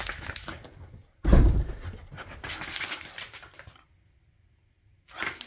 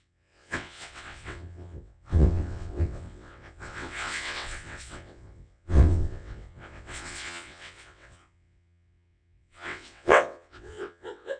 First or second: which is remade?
second